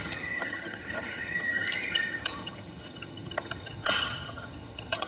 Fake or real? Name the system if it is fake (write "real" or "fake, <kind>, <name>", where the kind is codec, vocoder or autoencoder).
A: fake, vocoder, HiFi-GAN